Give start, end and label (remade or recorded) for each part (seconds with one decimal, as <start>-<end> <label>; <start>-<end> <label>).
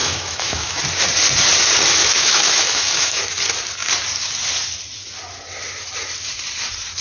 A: 0.0-0.8 remade; 0.8-2.0 recorded; 2.0-3.2 remade; 3.2-7.0 recorded